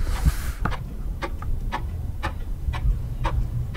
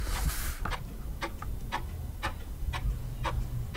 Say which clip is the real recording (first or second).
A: second